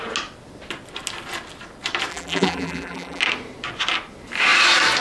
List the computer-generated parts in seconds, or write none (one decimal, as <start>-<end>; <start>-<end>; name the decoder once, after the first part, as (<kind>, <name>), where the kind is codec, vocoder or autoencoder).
2.1-3.2 (vocoder, BigVGAN v2)